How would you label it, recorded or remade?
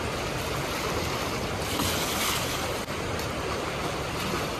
recorded